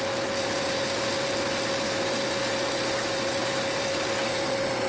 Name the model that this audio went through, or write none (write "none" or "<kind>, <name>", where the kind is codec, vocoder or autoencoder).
none